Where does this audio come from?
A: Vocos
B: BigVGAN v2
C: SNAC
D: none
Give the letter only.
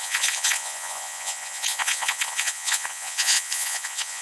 A